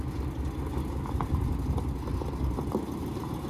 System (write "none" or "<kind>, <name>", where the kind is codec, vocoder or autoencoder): none